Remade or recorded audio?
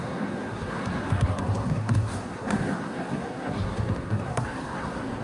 remade